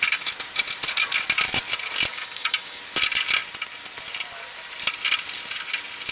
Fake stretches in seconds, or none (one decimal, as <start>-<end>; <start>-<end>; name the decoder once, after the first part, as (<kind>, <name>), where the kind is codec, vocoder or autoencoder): 2.1-2.8 (codec, DAC)